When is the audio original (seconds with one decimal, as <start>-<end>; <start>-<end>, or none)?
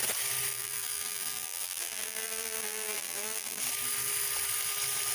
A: 0.0-0.5; 3.6-5.1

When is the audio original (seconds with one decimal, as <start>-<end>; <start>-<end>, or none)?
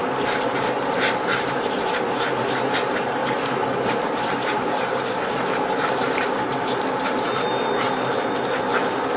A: 3.2-4.0